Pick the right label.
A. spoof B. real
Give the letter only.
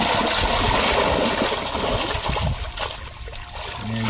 B